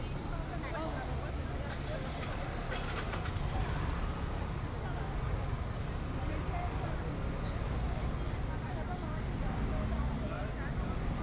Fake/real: real